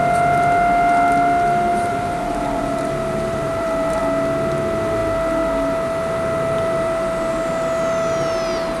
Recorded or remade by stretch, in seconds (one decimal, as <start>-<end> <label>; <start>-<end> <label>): 0.0-1.7 recorded; 1.7-4.0 remade; 4.0-8.8 recorded